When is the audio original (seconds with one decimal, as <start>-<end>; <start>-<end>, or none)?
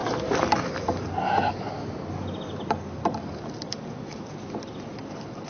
0.0-5.5